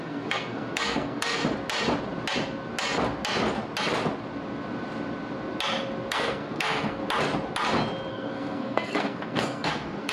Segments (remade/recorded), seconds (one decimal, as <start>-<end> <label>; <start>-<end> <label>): 0.0-1.4 remade; 1.4-6.1 recorded; 6.1-7.0 remade; 7.0-8.1 recorded; 8.1-10.1 remade